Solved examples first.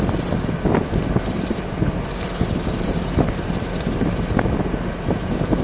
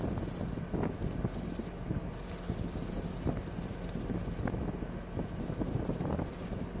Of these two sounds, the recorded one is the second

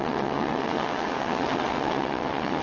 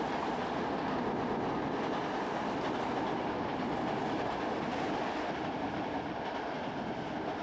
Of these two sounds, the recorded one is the second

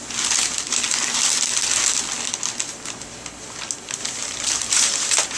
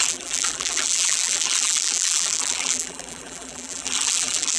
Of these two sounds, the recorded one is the first